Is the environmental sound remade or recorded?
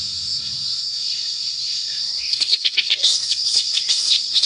remade